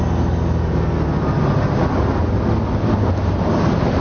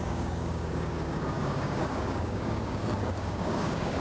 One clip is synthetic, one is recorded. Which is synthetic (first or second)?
second